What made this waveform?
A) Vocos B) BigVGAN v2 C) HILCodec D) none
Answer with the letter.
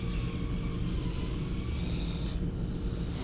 D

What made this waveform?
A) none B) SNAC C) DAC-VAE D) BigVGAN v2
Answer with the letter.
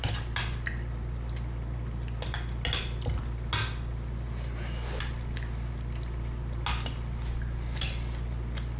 A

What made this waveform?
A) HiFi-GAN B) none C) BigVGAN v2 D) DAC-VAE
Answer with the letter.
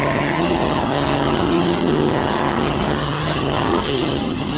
A